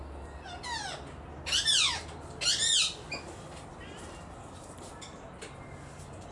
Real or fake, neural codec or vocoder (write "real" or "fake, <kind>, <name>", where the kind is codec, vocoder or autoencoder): real